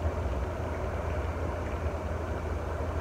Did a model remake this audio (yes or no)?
no